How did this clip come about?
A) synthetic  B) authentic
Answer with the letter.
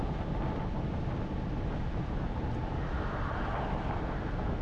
B